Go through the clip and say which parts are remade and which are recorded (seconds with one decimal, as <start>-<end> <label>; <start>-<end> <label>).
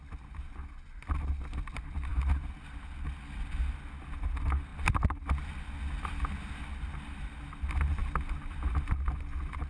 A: 0.0-9.7 recorded